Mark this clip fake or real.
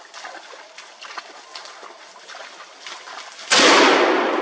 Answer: real